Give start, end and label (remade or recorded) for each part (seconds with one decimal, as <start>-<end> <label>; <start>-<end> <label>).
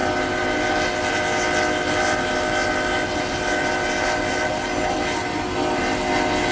0.0-6.5 recorded